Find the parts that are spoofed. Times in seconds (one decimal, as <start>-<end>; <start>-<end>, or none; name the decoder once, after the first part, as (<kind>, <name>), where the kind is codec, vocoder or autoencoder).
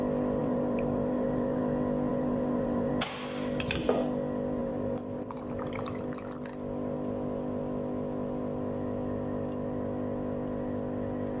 0.4-1.6 (vocoder, BigVGAN v2); 2.1-2.9; 4.6-6.0